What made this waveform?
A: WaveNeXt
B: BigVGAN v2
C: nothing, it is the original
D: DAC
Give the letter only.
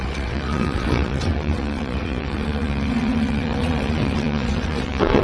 A